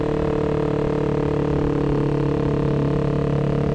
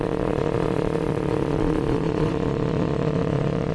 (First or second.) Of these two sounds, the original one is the first